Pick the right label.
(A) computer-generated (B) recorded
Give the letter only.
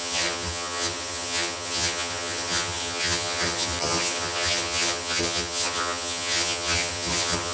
A